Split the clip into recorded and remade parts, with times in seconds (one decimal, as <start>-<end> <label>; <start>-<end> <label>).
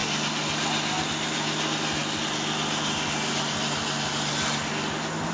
0.0-5.3 recorded